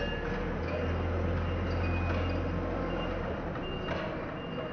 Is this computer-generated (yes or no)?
no